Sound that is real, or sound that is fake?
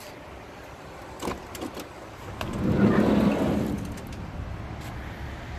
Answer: real